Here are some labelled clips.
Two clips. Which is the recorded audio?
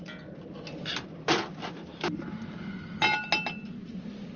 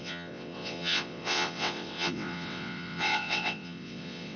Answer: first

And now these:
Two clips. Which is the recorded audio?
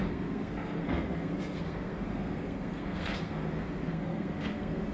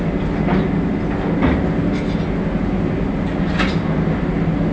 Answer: second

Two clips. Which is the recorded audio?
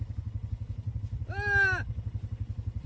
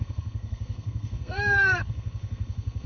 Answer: first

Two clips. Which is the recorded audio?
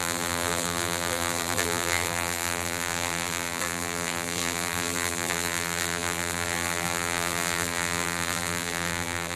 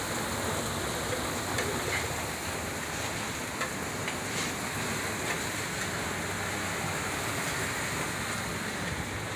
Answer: second